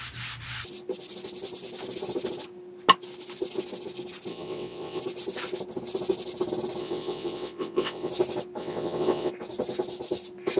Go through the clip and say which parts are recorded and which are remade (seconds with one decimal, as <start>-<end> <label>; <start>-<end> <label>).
0.0-4.3 recorded; 4.3-5.0 remade; 5.0-6.8 recorded; 6.8-8.1 remade; 8.1-8.6 recorded; 8.6-9.3 remade; 9.3-10.6 recorded